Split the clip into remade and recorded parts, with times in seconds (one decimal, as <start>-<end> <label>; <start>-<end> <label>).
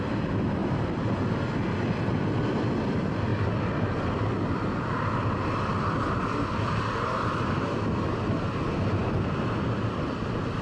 0.0-10.6 recorded